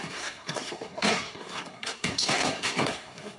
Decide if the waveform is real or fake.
fake